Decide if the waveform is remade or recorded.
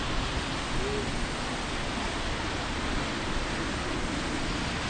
recorded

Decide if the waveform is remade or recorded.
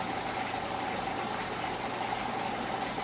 recorded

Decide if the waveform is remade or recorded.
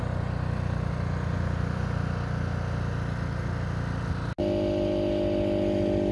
recorded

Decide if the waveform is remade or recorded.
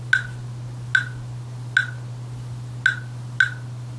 recorded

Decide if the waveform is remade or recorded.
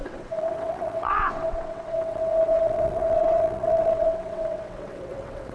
remade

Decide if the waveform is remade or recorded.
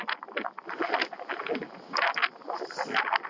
recorded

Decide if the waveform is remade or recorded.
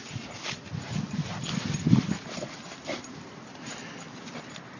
recorded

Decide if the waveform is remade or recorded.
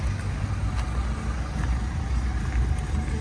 recorded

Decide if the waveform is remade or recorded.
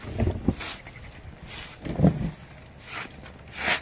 recorded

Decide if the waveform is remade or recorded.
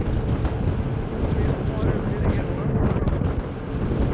recorded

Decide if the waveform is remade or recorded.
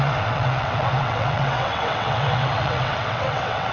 remade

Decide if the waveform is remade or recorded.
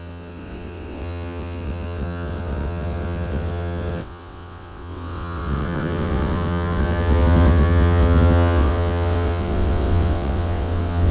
remade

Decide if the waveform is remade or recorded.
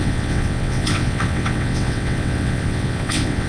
remade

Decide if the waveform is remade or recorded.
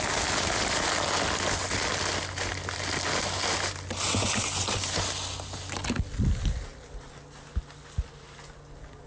recorded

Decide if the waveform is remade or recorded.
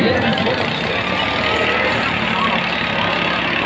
recorded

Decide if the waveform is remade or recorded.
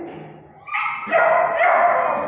recorded